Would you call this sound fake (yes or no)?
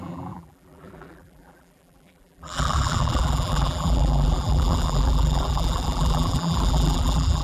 yes